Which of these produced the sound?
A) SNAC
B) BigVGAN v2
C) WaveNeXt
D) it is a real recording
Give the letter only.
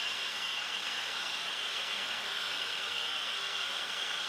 A